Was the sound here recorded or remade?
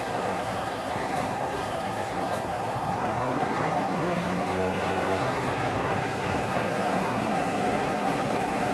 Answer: remade